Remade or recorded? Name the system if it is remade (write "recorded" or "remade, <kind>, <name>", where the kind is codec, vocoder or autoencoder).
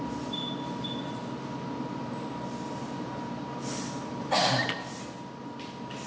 recorded